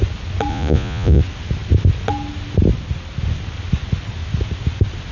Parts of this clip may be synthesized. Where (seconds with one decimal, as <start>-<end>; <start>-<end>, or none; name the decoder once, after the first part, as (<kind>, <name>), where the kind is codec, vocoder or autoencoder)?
0.5-1.2 (vocoder, Vocos)

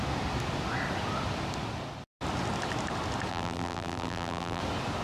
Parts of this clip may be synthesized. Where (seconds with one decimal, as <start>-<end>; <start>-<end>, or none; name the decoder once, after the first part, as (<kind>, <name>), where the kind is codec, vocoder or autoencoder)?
3.3-4.6 (vocoder, BigVGAN v2)

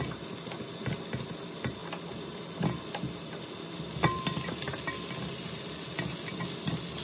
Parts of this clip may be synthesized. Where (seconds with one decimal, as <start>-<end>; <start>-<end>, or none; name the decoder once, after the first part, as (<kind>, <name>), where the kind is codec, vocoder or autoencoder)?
none

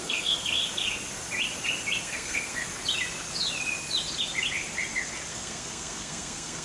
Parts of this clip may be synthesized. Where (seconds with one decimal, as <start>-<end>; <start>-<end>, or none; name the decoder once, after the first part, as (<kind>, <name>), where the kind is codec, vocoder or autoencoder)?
0.0-0.6 (codec, SNAC); 2.0-2.7; 5.3-6.6

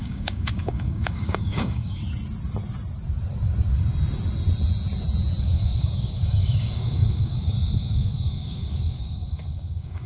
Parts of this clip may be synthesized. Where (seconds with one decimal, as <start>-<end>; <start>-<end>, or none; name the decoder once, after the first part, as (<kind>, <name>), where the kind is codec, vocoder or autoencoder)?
0.0-2.0 (codec, DAC); 5.4-10.1

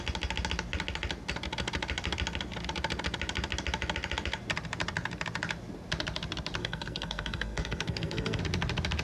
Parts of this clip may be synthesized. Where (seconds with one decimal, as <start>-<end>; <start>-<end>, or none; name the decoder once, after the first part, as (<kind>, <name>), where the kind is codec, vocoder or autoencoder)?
6.6-8.4 (codec, SNAC)

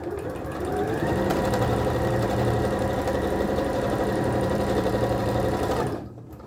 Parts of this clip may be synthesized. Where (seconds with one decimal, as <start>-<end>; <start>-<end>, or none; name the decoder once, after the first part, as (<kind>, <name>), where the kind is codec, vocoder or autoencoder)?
0.0-6.5 (vocoder, BigVGAN v2)

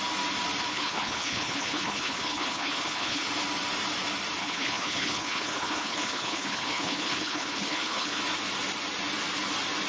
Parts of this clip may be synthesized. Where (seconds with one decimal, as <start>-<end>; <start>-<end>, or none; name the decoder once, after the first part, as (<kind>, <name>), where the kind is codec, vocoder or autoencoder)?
0.7-3.3 (codec, HILCodec); 4.4-8.2